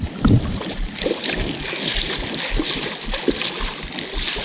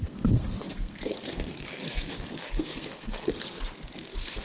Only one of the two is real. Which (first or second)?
first